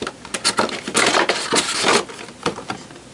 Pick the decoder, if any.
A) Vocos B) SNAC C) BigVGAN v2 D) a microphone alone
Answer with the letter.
D